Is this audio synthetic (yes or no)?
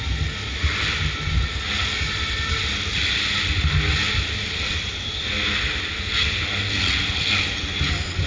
no